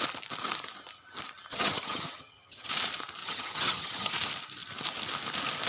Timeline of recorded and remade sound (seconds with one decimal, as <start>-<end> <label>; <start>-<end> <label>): 0.0-1.5 recorded; 1.5-2.7 remade; 2.7-3.2 recorded; 3.2-4.1 remade; 4.1-5.7 recorded